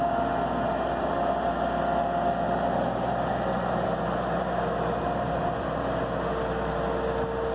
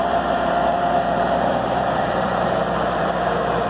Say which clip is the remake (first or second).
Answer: second